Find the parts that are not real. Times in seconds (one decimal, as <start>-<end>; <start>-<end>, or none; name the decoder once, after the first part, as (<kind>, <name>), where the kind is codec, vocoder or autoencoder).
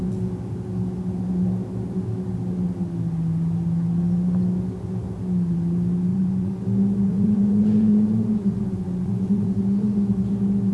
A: 6.1-6.6 (vocoder, Vocos); 7.1-9.6